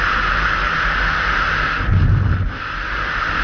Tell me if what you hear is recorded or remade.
recorded